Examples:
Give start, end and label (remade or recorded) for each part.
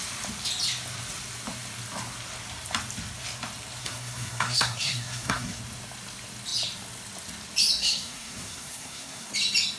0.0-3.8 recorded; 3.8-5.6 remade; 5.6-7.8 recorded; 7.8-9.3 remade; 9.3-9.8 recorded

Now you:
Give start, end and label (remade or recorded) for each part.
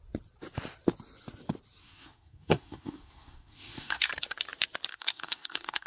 0.0-1.8 recorded; 1.8-4.1 remade; 4.1-4.9 recorded; 4.9-5.9 remade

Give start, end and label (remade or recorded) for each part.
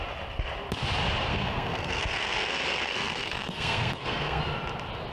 0.0-1.3 recorded; 1.3-4.4 remade; 4.4-5.1 recorded